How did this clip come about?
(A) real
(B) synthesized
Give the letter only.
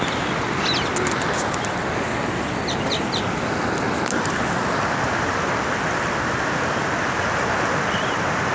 A